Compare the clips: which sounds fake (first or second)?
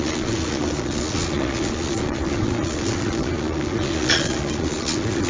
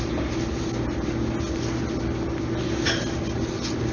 first